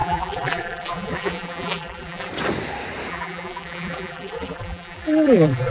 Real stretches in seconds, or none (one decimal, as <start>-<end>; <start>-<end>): 2.3-3.1